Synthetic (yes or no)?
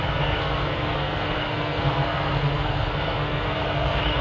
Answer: yes